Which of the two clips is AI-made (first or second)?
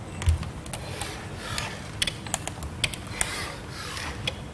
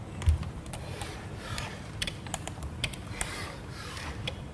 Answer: second